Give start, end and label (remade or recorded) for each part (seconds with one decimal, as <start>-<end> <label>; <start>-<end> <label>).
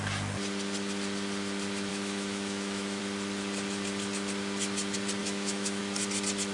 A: 0.0-1.9 recorded; 1.9-3.0 remade; 3.0-5.2 recorded; 5.2-5.8 remade; 5.8-6.5 recorded